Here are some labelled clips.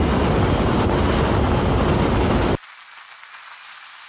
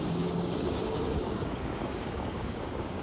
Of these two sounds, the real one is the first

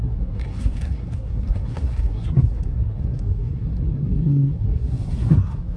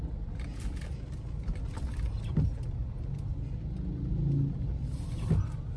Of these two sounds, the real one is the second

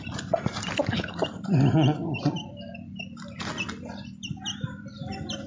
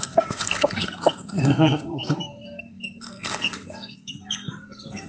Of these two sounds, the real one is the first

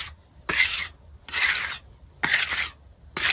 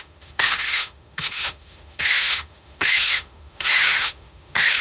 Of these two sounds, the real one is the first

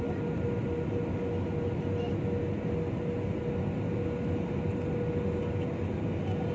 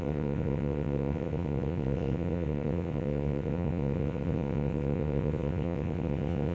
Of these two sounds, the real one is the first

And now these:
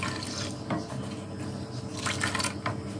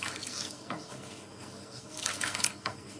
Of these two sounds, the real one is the first